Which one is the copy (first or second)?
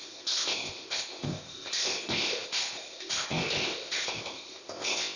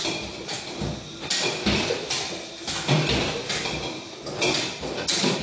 first